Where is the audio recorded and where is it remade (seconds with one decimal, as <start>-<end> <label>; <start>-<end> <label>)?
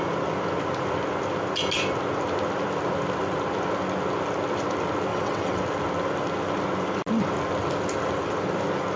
0.0-5.1 recorded; 5.1-5.6 remade; 5.6-9.0 recorded